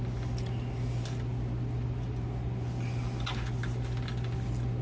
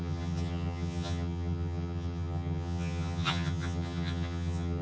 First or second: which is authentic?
first